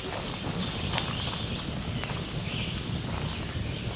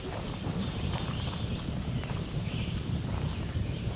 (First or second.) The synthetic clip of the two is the second